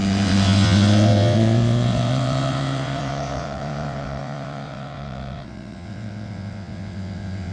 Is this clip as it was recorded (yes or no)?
no